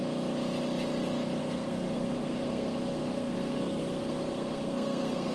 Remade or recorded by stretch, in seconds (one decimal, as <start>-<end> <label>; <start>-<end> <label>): 0.0-1.4 recorded; 1.4-5.3 remade